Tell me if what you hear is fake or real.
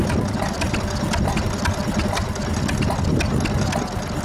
real